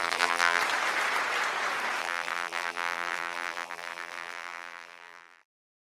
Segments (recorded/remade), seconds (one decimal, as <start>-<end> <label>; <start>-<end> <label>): 0.0-0.6 remade; 0.6-2.0 recorded; 2.0-5.6 remade; 5.6-6.0 recorded